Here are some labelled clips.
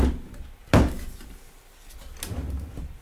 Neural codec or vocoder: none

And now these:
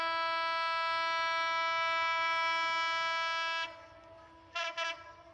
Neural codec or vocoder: none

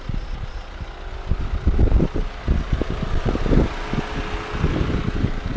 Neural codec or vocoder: none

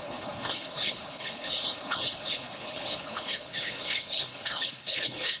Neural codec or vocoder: codec, HILCodec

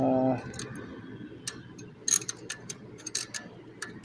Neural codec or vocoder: none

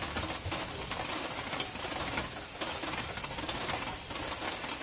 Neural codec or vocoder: none